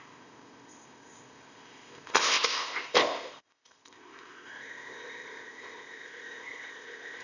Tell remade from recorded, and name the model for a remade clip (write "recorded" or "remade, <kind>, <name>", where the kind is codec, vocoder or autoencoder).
remade, codec, ZipCodec